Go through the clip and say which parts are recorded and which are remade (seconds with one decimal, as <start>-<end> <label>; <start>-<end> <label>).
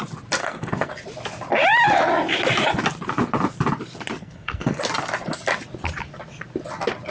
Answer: 0.0-0.4 recorded; 0.4-0.9 remade; 0.9-4.2 recorded; 4.2-4.8 remade; 4.8-7.1 recorded